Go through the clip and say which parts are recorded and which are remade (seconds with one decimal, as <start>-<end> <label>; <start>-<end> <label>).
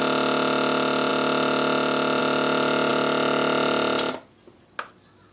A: 0.0-5.3 recorded